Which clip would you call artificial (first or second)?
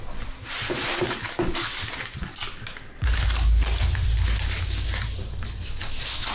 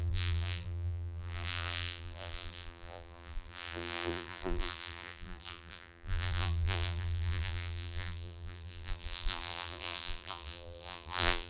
second